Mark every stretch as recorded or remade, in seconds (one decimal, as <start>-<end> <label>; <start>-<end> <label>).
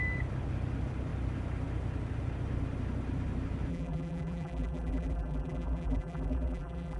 0.0-3.7 recorded; 3.7-7.0 remade